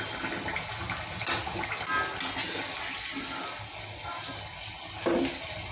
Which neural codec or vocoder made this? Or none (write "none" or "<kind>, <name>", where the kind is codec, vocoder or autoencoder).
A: none